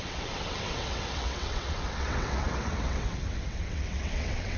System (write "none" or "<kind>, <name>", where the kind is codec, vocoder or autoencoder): vocoder, WaveNeXt